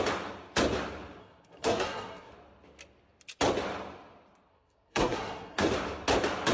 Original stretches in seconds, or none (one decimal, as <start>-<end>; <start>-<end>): 0.0-1.2; 2.3-4.5; 5.7-6.5